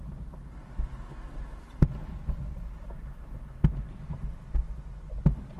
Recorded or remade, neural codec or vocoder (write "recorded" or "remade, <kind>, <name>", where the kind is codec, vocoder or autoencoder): recorded